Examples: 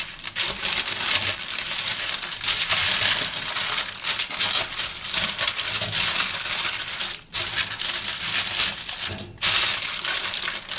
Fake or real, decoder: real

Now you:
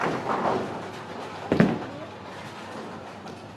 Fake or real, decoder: real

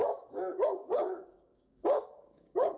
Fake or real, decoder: fake, codec, DAC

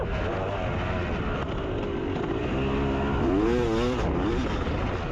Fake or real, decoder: real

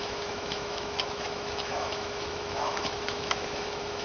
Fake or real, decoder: fake, autoencoder, DAC-VAE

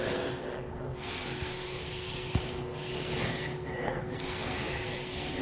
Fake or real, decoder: fake, codec, SNAC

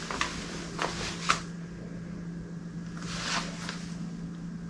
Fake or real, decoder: real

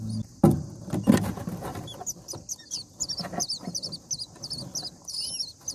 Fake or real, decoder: real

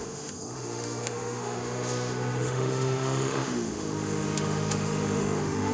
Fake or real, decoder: fake, autoencoder, DAC-VAE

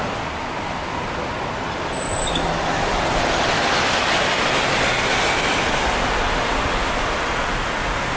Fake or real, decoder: real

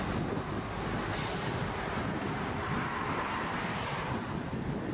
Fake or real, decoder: real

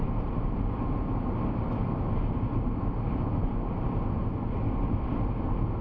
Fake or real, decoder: real